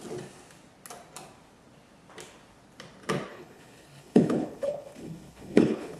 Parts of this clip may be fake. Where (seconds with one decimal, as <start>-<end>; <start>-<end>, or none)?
3.3-6.0